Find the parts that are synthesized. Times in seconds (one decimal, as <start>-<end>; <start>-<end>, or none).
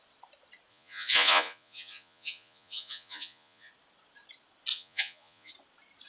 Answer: 0.7-3.7; 4.7-5.5